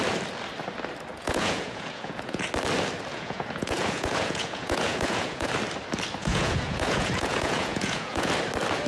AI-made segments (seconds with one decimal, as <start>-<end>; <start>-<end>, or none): 1.1-2.5; 3.1-5.5; 6.2-8.3